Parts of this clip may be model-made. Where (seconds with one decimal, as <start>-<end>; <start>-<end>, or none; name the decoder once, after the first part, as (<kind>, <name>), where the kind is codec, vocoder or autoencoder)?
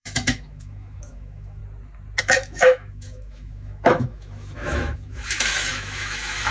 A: 0.0-1.6 (autoencoder, DAC-VAE); 2.2-6.5